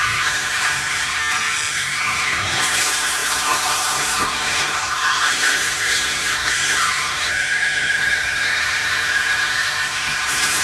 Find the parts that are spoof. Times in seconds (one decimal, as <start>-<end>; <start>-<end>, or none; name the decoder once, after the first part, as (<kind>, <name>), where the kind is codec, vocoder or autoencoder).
0.0-1.2 (codec, SNAC); 1.7-10.6